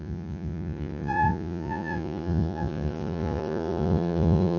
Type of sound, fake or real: fake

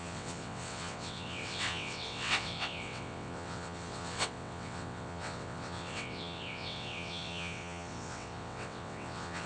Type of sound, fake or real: fake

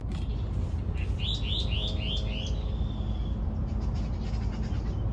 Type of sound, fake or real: real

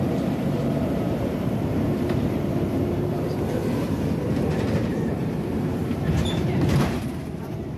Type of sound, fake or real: fake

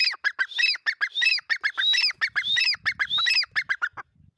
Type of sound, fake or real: real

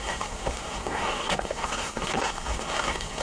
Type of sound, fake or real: fake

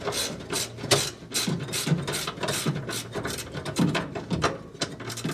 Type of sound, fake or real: real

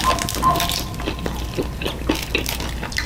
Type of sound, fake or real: real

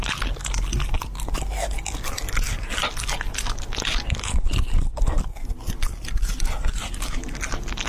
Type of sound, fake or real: real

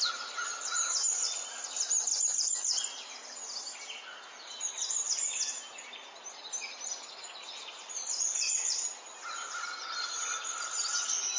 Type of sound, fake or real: real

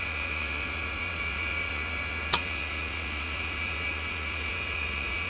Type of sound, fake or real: fake